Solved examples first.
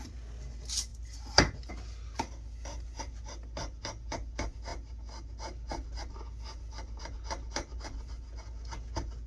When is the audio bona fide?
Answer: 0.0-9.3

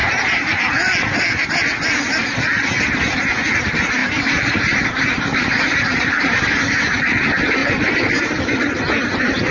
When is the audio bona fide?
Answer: 0.6-4.0; 6.6-7.6; 8.2-9.5

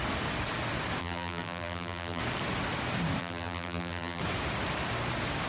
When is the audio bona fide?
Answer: 0.0-1.0; 2.2-3.2; 4.2-5.5

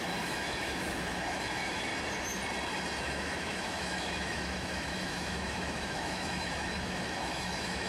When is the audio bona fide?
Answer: 1.9-3.0

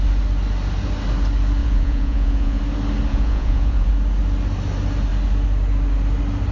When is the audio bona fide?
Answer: 0.0-1.6; 2.6-3.1; 3.9-6.5

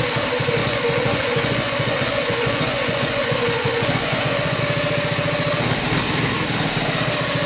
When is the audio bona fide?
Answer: 0.0-0.6; 4.6-7.5